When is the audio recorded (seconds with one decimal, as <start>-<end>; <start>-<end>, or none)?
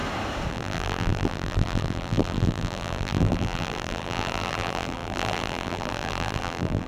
0.0-0.5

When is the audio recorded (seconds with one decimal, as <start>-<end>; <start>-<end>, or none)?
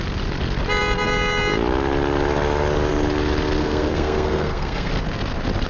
0.0-3.6; 4.9-5.7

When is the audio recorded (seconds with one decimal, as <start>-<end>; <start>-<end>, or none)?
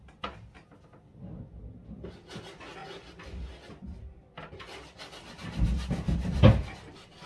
0.0-7.3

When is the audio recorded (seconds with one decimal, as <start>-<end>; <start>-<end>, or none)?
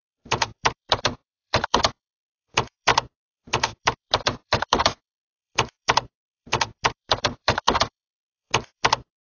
none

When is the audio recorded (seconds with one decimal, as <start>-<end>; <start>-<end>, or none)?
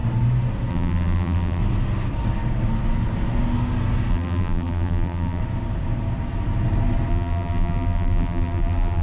0.0-0.7; 1.6-4.1; 5.4-7.1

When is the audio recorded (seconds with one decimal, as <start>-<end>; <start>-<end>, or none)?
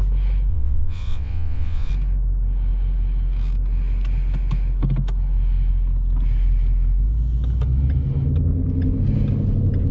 0.0-0.5; 1.9-9.9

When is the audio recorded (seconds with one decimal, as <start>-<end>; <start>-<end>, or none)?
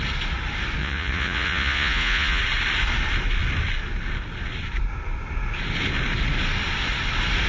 0.0-0.8; 2.4-7.5